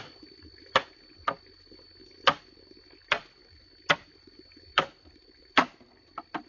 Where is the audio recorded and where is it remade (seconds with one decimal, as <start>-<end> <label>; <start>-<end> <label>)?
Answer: 0.0-6.5 recorded